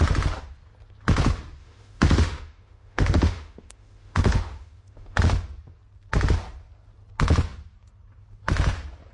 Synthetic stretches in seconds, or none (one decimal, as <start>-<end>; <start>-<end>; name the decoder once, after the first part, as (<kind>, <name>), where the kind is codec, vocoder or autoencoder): 1.6-5.2 (autoencoder, DAC-VAE)